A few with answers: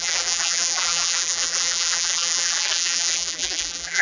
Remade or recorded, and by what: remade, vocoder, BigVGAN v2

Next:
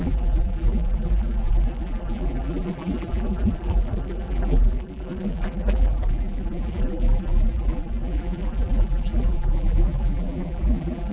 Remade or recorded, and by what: remade, vocoder, BigVGAN v2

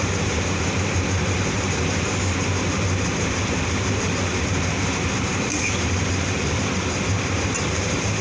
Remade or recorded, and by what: remade, vocoder, BigVGAN v2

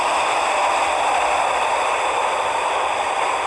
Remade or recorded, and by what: remade, vocoder, BigVGAN v2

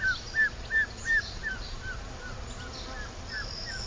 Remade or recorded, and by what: recorded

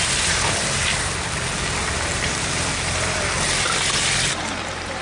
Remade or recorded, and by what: remade, vocoder, BigVGAN v2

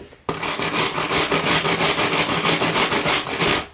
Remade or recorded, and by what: recorded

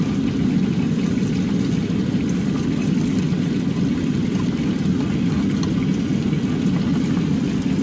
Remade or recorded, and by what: recorded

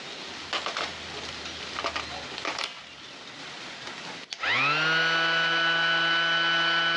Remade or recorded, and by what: recorded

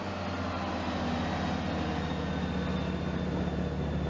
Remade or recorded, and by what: recorded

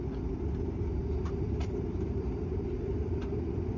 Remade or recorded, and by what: remade, vocoder, BigVGAN v2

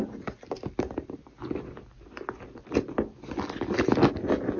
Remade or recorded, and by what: recorded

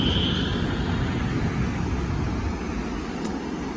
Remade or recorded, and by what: recorded